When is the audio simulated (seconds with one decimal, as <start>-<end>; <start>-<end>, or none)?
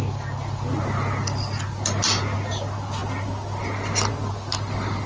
none